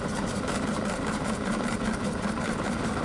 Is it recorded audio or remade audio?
remade